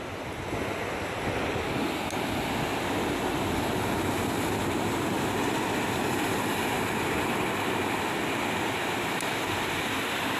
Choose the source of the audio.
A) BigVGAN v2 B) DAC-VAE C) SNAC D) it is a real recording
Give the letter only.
D